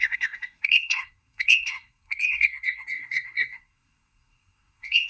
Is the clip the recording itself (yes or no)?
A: no